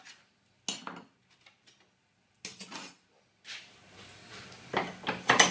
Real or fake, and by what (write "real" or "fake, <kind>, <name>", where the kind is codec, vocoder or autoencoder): real